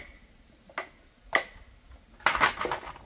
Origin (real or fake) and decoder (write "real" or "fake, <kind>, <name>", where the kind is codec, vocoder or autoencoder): real